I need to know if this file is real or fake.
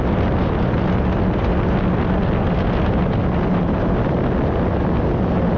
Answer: real